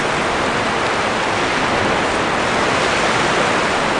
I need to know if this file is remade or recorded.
recorded